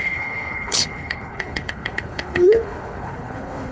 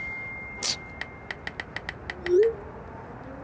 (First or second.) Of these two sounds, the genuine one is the second